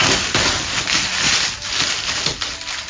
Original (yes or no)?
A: yes